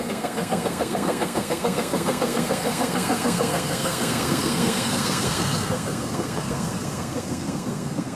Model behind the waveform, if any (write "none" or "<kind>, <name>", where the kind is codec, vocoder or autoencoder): codec, SNAC